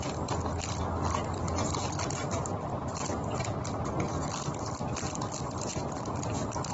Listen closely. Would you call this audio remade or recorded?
recorded